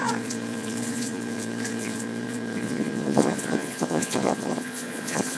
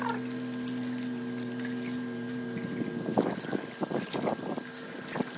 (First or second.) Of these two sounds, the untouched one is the second